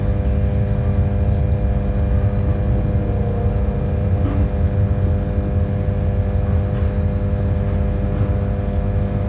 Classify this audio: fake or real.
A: real